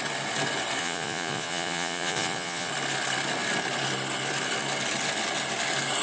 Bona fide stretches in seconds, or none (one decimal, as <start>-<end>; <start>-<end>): 0.0-0.8; 2.7-6.0